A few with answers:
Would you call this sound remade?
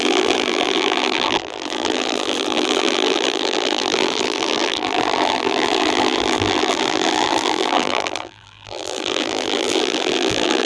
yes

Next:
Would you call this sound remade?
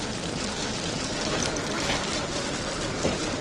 no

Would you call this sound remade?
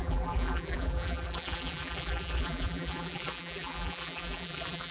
yes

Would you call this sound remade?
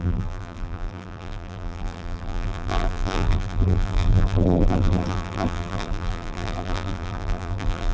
yes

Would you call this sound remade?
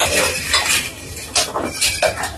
no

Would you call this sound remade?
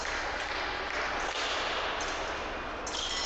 no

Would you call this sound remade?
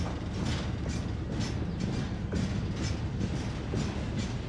no